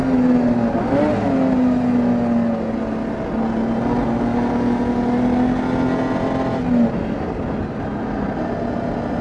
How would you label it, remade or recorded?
recorded